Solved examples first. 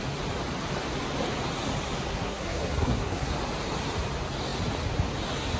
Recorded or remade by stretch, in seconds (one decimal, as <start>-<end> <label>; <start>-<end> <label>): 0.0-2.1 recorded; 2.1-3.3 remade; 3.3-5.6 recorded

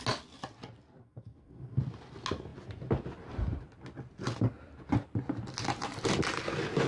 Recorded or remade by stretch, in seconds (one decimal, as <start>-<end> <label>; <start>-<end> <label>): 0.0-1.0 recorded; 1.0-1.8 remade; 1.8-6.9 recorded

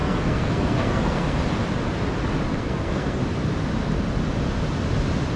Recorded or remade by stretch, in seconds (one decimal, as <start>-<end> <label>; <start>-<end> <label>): 0.0-1.4 remade; 1.4-2.5 recorded; 2.5-3.2 remade; 3.2-5.4 recorded

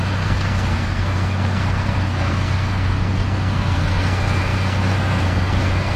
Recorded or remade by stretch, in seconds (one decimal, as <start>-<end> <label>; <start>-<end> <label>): 0.0-6.0 remade

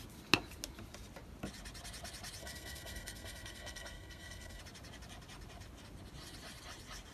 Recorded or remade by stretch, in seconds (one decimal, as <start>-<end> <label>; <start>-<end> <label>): 0.0-2.4 recorded; 2.4-4.6 remade; 4.6-7.1 recorded

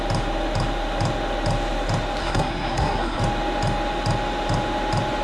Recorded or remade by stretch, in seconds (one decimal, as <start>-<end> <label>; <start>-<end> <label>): 0.0-2.2 recorded; 2.2-3.2 remade; 3.2-5.2 recorded

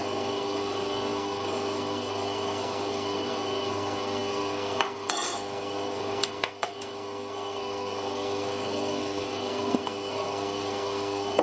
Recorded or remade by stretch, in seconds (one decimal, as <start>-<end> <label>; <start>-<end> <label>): 0.0-11.4 remade

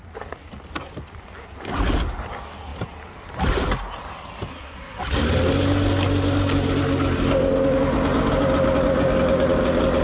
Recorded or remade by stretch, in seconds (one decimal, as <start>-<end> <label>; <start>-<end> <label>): 0.0-4.5 recorded; 4.5-5.0 remade; 5.0-10.0 recorded